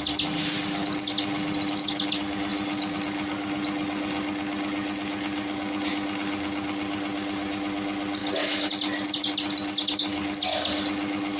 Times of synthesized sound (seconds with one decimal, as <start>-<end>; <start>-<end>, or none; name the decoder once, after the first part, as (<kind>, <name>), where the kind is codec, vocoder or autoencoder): none

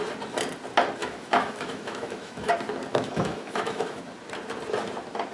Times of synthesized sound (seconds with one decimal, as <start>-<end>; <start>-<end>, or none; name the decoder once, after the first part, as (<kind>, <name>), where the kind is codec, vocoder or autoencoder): 1.0-2.5 (autoencoder, DAC-VAE); 2.9-4.0